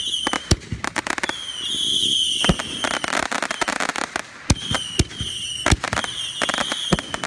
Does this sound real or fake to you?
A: real